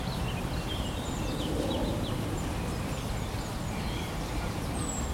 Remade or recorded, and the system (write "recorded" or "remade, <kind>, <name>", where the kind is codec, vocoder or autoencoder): recorded